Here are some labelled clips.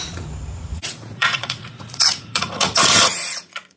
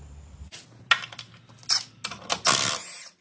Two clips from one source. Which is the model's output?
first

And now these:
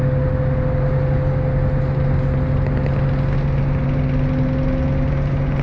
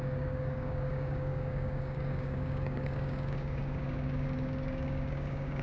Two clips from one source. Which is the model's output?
second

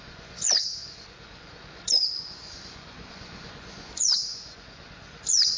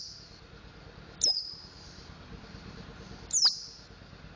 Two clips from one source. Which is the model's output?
first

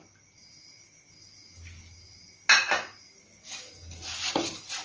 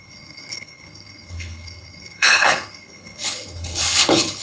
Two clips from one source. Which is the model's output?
second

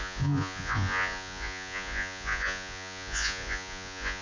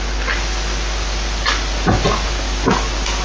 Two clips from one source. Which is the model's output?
first